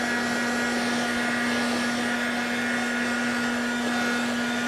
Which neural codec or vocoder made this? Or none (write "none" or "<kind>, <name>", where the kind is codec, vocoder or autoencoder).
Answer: none